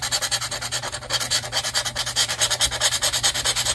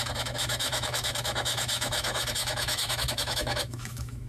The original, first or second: first